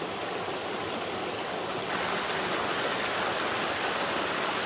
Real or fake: real